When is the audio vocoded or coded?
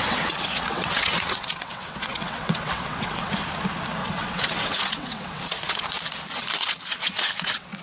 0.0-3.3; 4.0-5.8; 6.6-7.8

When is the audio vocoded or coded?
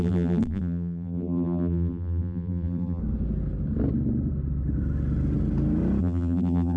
0.0-3.0; 6.0-6.8